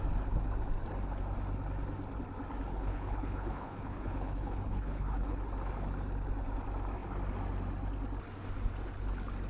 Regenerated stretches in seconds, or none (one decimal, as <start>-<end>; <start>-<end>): 2.7-5.4